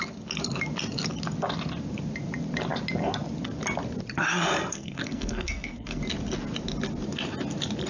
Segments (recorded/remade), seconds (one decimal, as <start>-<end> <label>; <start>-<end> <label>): 0.0-4.7 recorded; 4.7-6.0 remade; 6.0-7.9 recorded